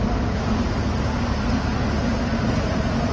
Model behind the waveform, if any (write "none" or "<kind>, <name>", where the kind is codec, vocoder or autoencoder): none